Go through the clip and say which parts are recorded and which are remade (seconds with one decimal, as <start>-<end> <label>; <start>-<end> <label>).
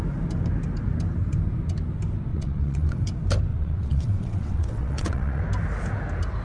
0.0-2.3 recorded; 2.3-3.0 remade; 3.0-3.5 recorded; 3.5-5.4 remade; 5.4-6.4 recorded